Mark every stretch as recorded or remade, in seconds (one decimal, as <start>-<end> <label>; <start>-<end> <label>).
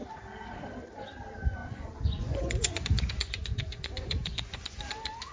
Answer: 0.0-1.6 recorded; 1.6-4.8 remade; 4.8-5.3 recorded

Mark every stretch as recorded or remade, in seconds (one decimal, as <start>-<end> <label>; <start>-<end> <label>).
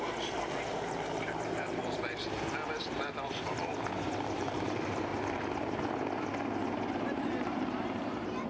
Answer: 0.0-2.2 remade; 2.2-2.8 recorded; 2.8-5.1 remade; 5.1-7.2 recorded; 7.2-8.5 remade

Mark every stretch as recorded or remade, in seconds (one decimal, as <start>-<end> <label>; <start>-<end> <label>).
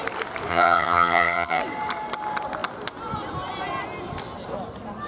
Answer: 0.0-0.5 recorded; 0.5-1.6 remade; 1.6-5.1 recorded